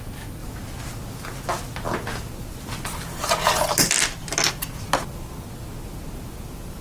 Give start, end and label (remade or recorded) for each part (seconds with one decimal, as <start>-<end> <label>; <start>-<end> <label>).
0.0-6.8 recorded